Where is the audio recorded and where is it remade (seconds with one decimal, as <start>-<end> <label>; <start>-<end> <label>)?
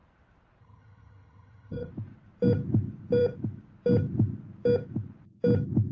0.0-0.6 recorded; 0.6-1.9 remade; 1.9-5.9 recorded